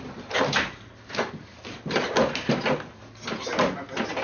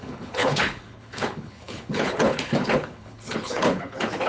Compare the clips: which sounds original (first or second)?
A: first